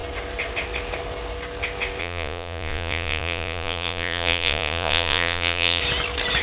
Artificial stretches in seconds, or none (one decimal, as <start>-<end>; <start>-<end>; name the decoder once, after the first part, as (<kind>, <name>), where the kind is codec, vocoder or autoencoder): 2.0-5.8 (vocoder, Vocos)

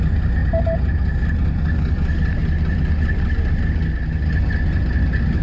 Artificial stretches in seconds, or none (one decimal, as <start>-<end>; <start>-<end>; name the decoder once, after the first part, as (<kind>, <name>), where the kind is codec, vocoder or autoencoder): none

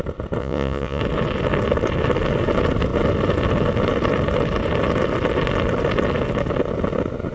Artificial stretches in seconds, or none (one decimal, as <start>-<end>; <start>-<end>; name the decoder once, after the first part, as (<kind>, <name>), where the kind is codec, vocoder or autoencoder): 0.4-1.0 (vocoder, Vocos)

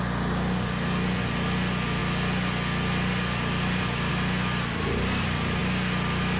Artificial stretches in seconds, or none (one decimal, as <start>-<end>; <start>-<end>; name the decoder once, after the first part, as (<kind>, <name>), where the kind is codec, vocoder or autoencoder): none

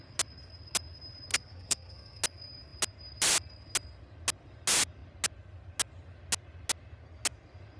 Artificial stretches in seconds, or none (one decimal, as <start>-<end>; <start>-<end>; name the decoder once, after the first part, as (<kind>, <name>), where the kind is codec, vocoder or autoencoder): 1.3-2.2 (codec, SNAC)

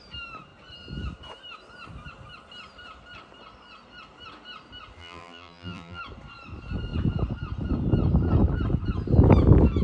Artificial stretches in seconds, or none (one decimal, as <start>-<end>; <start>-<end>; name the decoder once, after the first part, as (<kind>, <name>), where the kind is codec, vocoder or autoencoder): 5.0-6.0 (vocoder, BigVGAN v2)

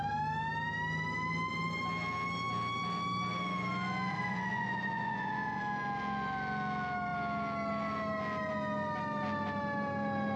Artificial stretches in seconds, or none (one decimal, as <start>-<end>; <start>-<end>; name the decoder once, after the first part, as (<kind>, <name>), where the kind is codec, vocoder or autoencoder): 4.1-5.6 (vocoder, Vocos)